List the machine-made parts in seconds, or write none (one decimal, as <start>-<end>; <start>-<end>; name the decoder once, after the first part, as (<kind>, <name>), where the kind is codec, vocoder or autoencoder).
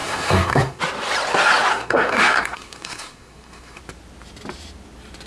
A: 0.0-0.8 (codec, SNAC); 1.7-3.8